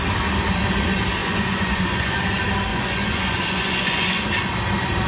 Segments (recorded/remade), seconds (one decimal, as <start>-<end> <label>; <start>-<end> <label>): 0.0-1.2 recorded; 1.2-2.2 remade; 2.2-2.7 recorded; 2.7-4.3 remade; 4.3-5.1 recorded

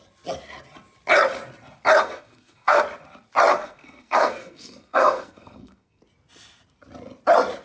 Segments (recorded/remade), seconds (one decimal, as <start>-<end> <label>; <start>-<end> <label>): 0.0-2.0 recorded; 2.0-2.8 remade; 2.8-3.5 recorded; 3.5-6.0 remade; 6.0-7.6 recorded

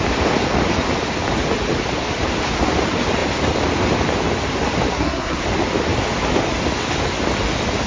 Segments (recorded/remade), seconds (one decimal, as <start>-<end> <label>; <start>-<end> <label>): 0.0-4.9 recorded; 4.9-5.4 remade; 5.4-7.9 recorded

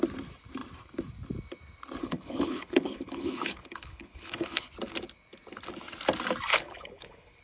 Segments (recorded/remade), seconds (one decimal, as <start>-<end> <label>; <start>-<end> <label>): 0.0-2.0 recorded; 2.0-4.7 remade; 4.7-6.5 recorded; 6.5-7.4 remade